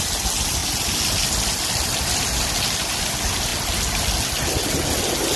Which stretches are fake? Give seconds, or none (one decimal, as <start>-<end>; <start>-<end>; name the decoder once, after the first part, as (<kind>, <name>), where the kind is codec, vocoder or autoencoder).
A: none